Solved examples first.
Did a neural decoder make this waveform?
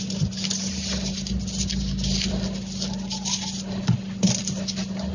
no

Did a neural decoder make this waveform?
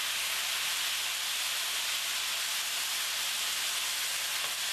no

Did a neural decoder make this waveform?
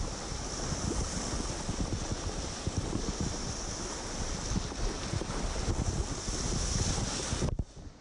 no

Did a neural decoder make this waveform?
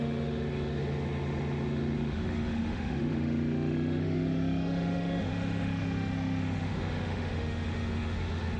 yes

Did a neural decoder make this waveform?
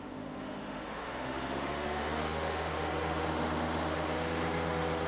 yes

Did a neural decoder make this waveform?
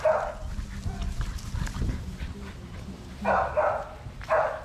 no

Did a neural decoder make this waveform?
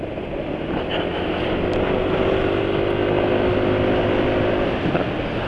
no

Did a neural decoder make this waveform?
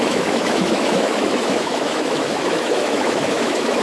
yes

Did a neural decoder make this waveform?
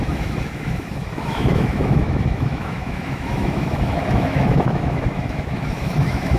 yes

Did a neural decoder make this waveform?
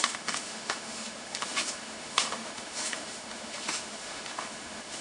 yes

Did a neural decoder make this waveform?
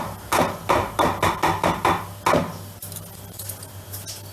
no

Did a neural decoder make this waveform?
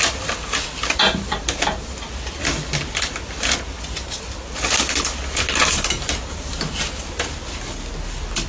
no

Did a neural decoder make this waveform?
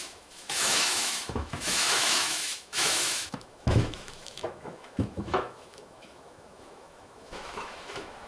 yes